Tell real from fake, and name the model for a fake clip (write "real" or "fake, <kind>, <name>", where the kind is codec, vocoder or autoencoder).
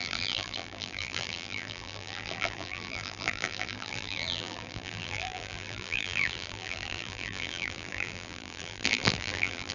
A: fake, vocoder, BigVGAN v2